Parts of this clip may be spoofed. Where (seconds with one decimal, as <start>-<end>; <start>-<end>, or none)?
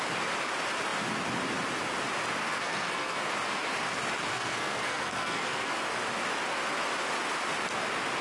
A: 2.4-3.3; 4.3-5.7